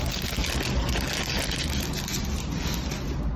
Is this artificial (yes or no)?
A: no